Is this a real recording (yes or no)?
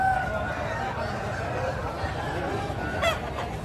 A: yes